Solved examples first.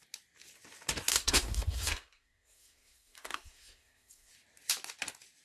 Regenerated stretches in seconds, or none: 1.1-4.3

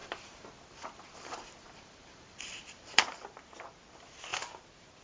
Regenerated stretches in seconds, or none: 0.0-3.0

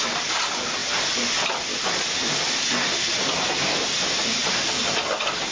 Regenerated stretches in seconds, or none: none

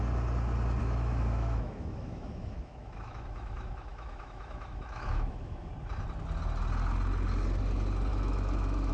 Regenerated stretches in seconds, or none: 0.8-5.7; 8.1-8.9

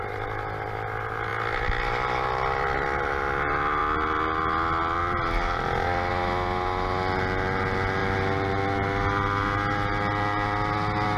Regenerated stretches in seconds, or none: none

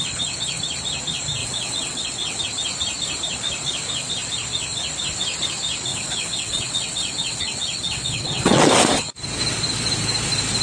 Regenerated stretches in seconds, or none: 1.4-2.4; 5.9-8.7

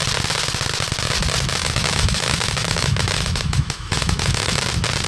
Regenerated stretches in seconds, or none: 1.6-4.6

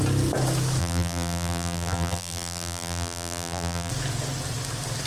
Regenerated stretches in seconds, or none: 0.8-3.9